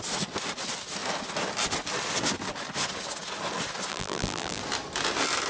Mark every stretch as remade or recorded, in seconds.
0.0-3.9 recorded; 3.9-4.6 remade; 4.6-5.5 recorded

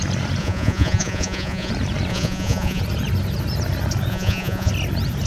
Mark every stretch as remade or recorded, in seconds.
0.0-0.4 recorded; 0.4-1.7 remade; 1.7-2.1 recorded; 2.1-2.8 remade; 2.8-4.1 recorded; 4.1-4.7 remade; 4.7-5.3 recorded

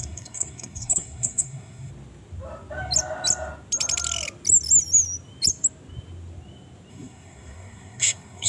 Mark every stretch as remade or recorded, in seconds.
0.0-1.9 remade; 1.9-6.9 recorded; 6.9-8.5 remade

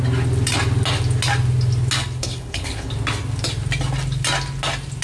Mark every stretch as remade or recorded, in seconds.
0.0-2.2 recorded; 2.2-2.9 remade; 2.9-5.0 recorded